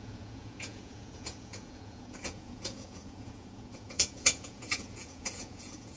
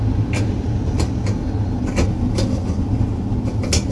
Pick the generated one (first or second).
first